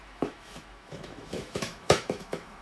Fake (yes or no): yes